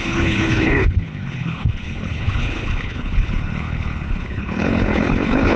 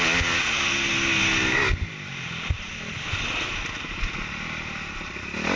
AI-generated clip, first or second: first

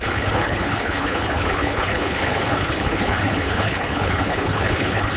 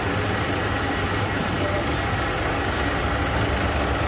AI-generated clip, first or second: first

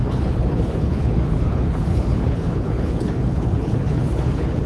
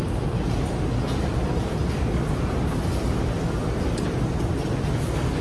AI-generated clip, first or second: first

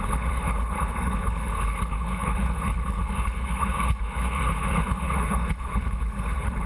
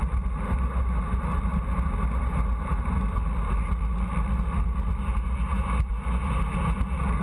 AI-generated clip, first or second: first